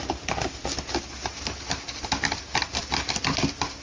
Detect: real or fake real